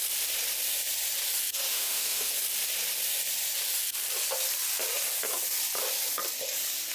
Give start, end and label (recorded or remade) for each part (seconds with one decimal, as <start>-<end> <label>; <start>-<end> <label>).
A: 0.0-1.7 recorded; 1.7-2.3 remade; 2.3-6.9 recorded